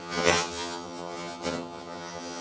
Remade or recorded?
remade